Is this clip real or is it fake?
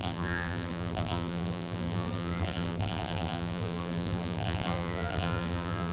fake